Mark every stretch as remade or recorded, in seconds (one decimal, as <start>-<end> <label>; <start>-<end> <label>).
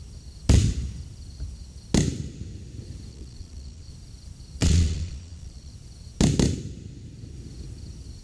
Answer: 0.0-3.1 recorded; 3.1-3.9 remade; 3.9-4.6 recorded; 4.6-5.7 remade; 5.7-8.2 recorded